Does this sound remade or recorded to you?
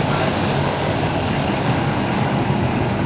remade